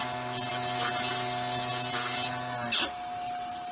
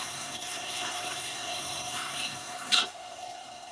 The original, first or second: first